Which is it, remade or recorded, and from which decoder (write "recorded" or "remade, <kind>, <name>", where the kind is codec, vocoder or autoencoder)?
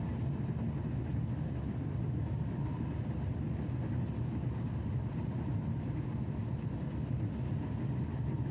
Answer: recorded